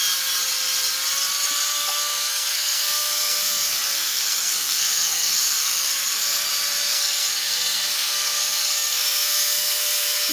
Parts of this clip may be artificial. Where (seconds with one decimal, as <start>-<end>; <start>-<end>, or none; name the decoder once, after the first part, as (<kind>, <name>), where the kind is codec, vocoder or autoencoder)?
1.7-6.5 (codec, SNAC); 6.9-10.3